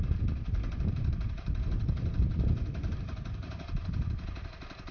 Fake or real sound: fake